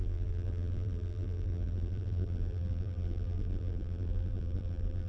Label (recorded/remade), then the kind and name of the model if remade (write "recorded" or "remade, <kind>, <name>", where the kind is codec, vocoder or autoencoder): remade, vocoder, BigVGAN v2